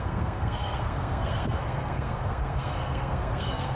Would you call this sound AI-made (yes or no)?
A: yes